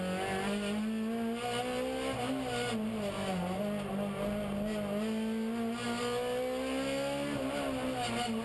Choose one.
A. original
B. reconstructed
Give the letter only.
A